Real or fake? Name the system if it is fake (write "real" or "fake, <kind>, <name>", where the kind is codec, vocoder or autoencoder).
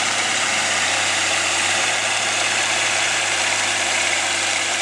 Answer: fake, vocoder, BigVGAN v2